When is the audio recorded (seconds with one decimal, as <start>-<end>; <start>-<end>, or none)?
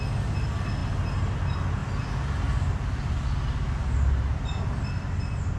0.0-5.6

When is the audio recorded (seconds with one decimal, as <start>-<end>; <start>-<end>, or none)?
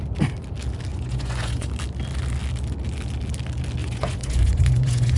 0.0-0.9; 1.7-3.8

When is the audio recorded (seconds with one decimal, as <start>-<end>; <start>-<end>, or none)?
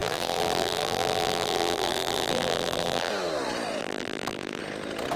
3.1-3.8; 4.6-5.2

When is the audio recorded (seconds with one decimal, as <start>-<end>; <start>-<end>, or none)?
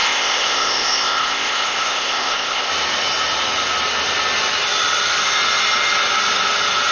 2.7-6.9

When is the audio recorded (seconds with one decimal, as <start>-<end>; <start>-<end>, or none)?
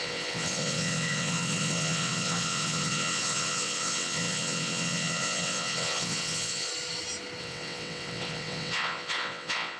6.7-7.4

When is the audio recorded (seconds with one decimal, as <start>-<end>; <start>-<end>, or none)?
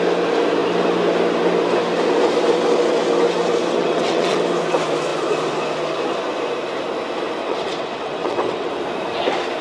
0.0-3.8; 4.4-7.4; 8.7-9.6